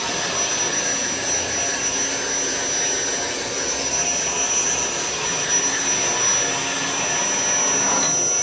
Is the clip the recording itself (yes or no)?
yes